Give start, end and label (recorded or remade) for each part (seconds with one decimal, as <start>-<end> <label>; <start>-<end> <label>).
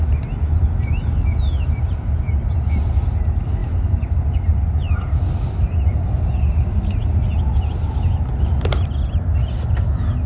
0.0-10.3 recorded